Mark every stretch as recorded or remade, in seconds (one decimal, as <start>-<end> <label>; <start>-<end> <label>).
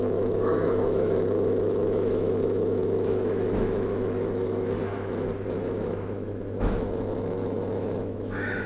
0.0-8.7 remade